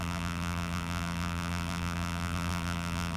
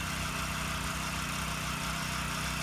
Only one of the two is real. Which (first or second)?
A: second